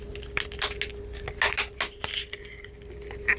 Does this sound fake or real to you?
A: real